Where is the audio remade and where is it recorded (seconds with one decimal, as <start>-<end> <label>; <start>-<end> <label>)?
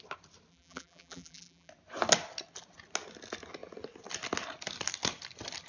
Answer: 0.0-0.5 recorded; 0.5-1.7 remade; 1.7-5.7 recorded